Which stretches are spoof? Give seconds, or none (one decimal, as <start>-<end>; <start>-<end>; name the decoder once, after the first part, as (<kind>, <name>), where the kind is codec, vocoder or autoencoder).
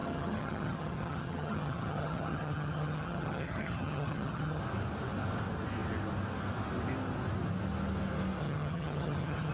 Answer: 0.0-4.6 (vocoder, HiFi-GAN); 8.4-9.5